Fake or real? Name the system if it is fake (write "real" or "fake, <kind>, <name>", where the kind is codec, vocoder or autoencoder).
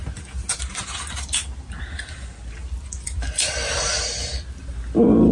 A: real